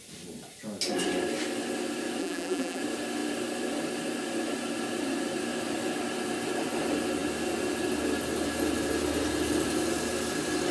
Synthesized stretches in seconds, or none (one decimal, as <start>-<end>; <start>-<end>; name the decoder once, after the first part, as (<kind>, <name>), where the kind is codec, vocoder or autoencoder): 2.2-2.8 (vocoder, BigVGAN v2)